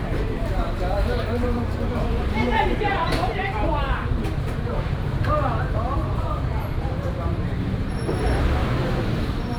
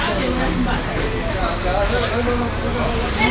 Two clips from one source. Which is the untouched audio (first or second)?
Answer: second